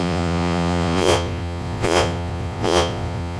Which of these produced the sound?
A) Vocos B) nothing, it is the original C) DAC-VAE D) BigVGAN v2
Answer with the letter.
A